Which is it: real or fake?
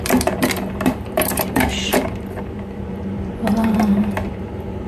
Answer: fake